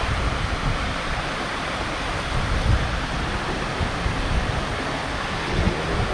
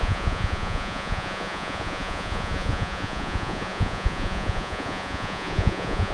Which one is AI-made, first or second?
second